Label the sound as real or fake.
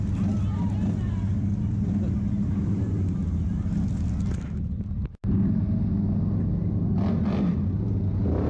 real